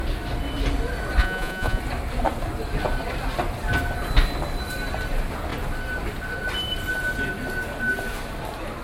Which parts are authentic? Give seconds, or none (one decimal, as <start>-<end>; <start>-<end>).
0.0-1.2; 1.8-8.8